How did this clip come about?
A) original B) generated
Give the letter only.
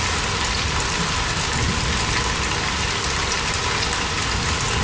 A